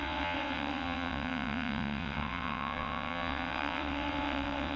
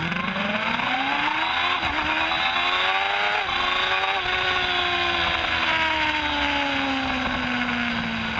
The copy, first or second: first